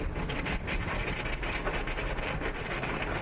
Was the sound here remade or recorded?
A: remade